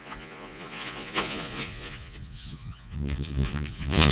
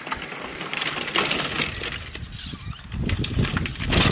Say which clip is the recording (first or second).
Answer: second